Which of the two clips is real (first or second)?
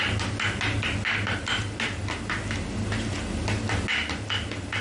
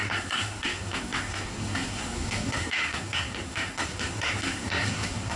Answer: first